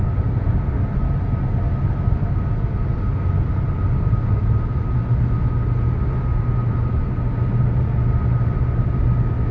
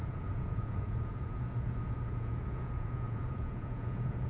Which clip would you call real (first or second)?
first